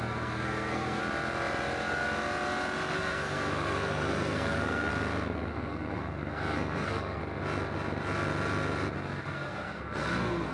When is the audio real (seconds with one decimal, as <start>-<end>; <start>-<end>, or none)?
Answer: 1.0-2.9; 4.9-5.5; 7.2-9.2